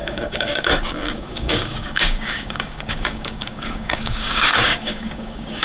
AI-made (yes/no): yes